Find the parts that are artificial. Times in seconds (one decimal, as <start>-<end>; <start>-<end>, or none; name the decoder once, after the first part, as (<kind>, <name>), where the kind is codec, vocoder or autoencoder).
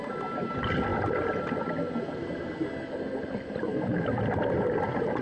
none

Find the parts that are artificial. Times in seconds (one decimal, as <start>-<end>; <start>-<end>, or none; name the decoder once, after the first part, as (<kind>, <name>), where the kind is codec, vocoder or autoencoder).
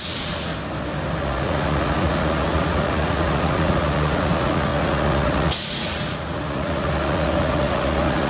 0.0-0.5 (vocoder, Vocos); 1.2-8.3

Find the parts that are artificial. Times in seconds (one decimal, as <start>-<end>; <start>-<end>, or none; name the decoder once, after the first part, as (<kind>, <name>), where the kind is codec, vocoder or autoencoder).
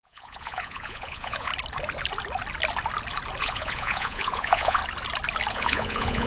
0.0-1.5 (vocoder, Vocos); 3.4-4.8; 5.5-6.3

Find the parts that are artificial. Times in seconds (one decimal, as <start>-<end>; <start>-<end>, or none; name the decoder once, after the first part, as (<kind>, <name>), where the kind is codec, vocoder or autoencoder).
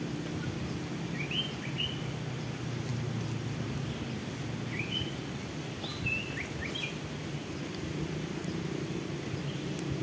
none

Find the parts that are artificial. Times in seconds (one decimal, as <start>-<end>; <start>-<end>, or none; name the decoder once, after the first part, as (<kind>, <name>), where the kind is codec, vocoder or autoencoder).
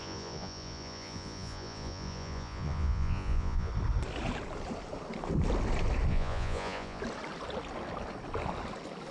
0.0-3.7 (vocoder, Vocos); 6.1-7.0